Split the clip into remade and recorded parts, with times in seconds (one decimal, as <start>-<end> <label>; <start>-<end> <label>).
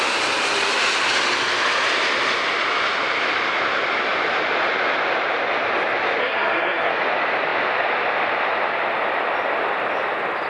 0.0-6.2 recorded; 6.2-6.9 remade; 6.9-10.5 recorded